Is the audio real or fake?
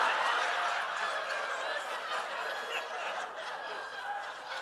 real